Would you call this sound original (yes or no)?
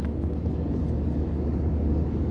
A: no